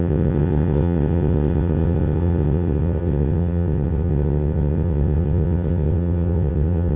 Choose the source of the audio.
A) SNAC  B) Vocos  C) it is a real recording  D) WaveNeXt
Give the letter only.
D